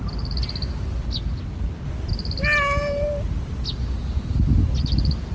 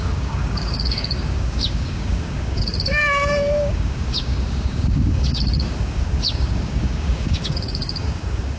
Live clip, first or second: first